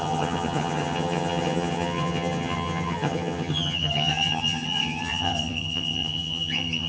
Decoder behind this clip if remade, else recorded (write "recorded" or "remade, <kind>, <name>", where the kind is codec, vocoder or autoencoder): remade, vocoder, HiFi-GAN